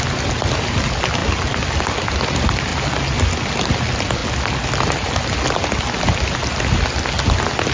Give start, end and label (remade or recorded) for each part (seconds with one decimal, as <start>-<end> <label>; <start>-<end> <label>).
0.0-7.7 recorded